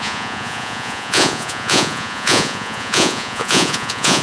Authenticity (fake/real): fake